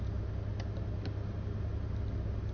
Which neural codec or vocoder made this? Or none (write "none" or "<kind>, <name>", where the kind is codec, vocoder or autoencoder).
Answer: none